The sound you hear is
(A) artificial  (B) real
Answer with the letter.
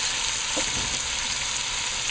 B